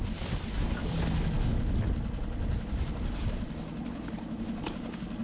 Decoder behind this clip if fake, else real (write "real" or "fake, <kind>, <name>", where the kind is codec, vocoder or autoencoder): real